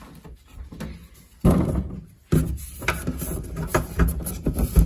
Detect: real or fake real